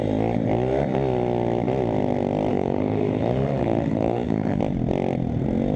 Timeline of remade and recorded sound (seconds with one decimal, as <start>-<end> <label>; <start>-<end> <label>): 0.0-2.5 recorded; 2.5-4.6 remade; 4.6-5.8 recorded